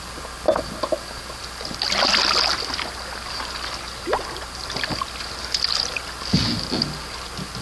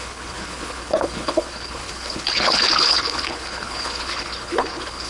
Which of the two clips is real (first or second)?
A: first